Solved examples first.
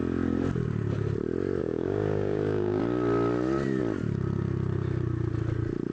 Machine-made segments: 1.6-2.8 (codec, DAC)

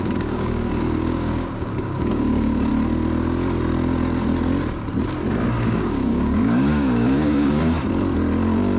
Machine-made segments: 0.0-2.7 (codec, DAC); 5.6-7.6

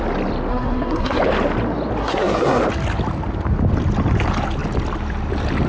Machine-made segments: 0.5-1.2 (codec, SNAC); 2.0-2.6

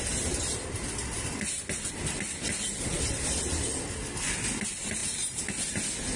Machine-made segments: none